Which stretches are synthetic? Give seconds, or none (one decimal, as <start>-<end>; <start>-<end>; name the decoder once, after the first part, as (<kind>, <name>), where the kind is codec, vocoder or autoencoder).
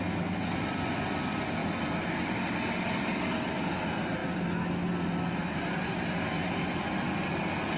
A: none